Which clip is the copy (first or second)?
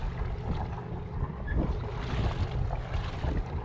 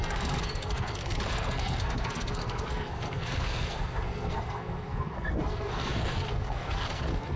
second